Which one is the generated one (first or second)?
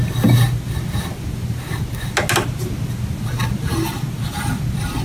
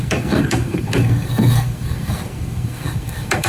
second